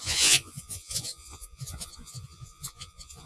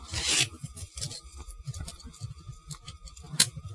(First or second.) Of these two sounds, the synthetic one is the first